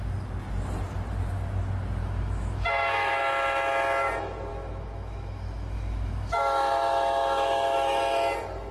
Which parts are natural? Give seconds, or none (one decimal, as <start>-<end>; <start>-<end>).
0.0-2.0; 3.2-4.5; 8.0-8.7